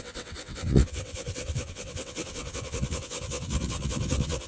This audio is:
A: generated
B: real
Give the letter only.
A